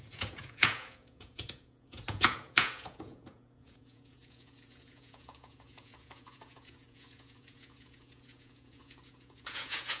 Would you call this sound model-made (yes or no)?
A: yes